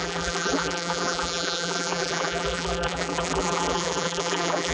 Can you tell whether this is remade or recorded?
remade